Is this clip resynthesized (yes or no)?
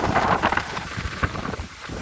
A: yes